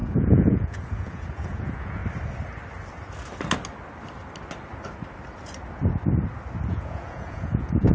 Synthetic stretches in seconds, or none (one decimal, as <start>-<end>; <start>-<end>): 0.0-2.0; 6.7-7.9